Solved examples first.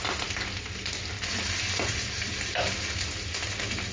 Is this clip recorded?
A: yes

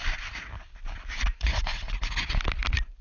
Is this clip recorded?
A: yes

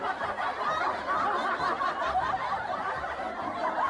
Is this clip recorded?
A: yes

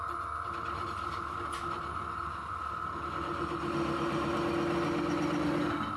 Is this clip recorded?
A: yes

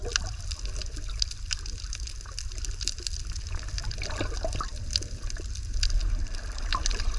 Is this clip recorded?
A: yes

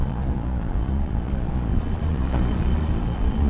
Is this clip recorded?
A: no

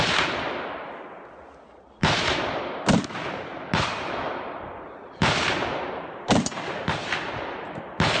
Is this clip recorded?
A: yes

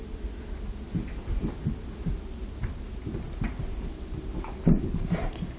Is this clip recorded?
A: yes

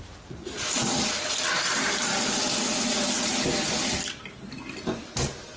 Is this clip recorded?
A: yes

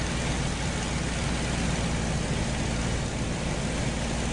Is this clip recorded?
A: yes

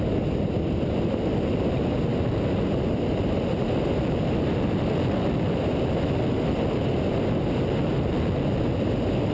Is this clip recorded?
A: yes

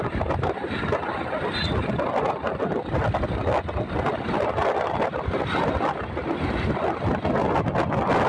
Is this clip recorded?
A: yes